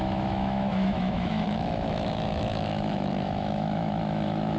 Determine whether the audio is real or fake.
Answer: fake